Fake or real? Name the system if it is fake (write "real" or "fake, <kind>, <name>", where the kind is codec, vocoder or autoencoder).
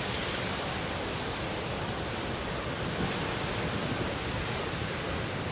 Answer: real